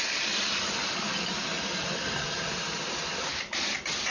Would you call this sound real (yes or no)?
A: yes